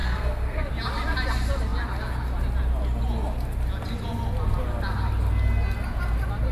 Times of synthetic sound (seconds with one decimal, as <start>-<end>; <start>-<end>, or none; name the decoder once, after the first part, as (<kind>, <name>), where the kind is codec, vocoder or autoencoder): 0.0-0.7 (codec, SNAC)